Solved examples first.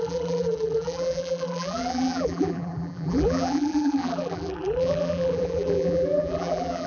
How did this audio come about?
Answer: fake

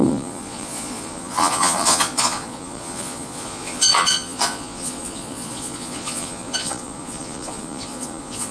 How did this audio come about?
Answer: fake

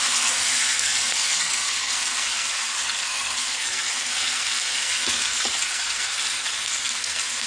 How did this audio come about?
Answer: fake